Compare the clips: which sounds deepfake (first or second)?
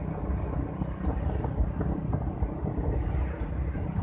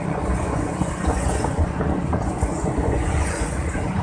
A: second